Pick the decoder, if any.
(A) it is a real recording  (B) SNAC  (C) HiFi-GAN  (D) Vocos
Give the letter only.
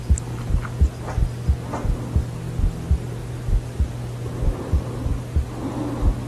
A